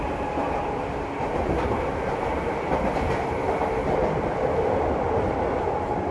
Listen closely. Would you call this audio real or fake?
real